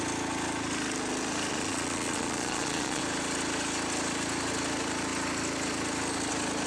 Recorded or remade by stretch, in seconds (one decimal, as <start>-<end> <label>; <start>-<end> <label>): 0.0-1.5 recorded; 1.5-3.0 remade; 3.0-6.7 recorded